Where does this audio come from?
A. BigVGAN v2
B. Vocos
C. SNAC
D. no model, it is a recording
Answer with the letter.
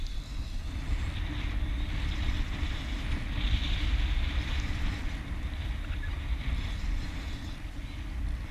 D